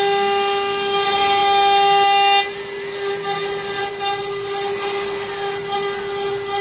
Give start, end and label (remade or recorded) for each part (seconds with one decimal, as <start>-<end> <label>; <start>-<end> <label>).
0.0-6.6 recorded